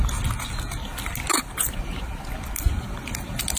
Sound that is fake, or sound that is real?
real